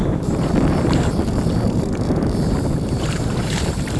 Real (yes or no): no